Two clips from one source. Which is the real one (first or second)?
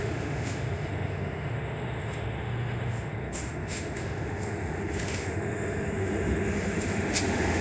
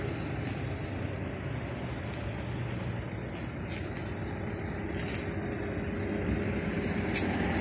second